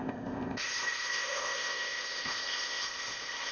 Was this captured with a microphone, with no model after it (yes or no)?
no